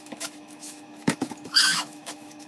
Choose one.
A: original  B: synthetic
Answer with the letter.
B